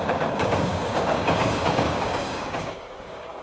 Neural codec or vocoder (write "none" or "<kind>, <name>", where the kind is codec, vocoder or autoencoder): codec, DAC